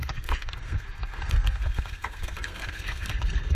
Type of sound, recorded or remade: remade